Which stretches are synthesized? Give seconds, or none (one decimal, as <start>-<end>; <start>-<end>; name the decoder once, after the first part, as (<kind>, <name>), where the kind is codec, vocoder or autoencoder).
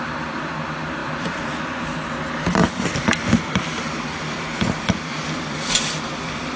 1.0-1.6 (vocoder, BigVGAN v2); 2.6-6.6